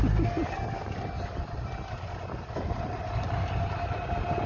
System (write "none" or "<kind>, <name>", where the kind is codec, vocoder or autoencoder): none